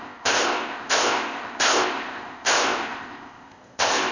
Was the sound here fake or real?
fake